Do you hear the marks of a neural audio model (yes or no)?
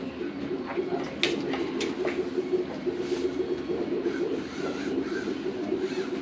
no